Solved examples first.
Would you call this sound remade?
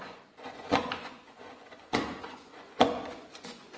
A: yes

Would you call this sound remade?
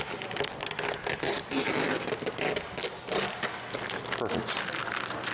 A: no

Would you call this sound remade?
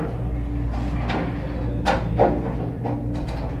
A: no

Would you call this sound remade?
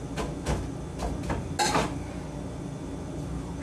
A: no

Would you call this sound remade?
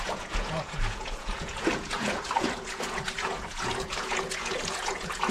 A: yes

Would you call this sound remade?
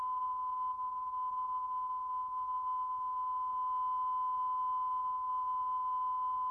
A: no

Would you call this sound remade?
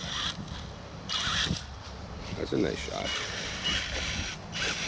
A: no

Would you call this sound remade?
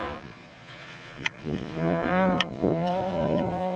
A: yes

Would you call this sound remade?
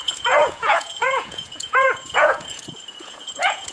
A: yes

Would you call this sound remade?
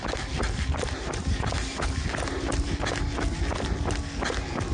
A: no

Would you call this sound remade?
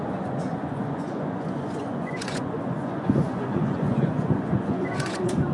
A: yes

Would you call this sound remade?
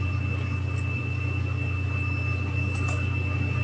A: no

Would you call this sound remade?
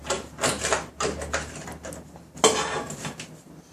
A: no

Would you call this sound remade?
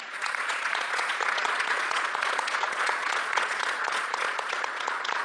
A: yes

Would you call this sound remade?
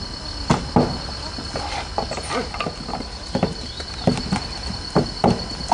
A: no